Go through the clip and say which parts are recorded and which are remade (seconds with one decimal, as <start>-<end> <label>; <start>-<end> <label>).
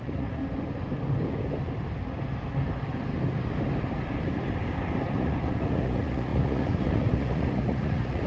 0.0-0.4 remade; 0.4-5.1 recorded; 5.1-8.3 remade